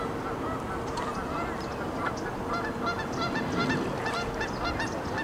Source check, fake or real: real